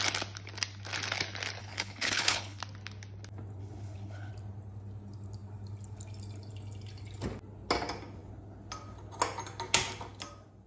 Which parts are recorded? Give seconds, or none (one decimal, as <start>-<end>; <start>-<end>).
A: 0.0-1.6; 2.6-3.6; 4.3-10.7